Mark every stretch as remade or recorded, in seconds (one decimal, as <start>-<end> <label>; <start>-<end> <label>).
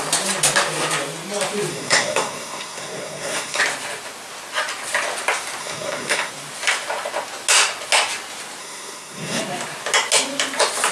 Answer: 0.0-1.7 recorded; 1.7-3.6 remade; 3.6-5.6 recorded; 5.6-6.3 remade; 6.3-8.6 recorded; 8.6-9.4 remade; 9.4-10.9 recorded